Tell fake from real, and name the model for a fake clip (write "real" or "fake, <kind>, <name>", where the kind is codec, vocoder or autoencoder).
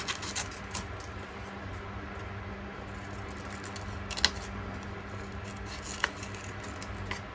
real